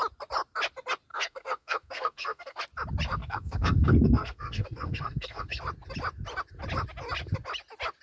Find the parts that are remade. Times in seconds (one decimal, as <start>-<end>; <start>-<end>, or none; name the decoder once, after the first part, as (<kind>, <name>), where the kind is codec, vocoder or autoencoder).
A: 1.1-2.6 (codec, SNAC); 3.2-5.6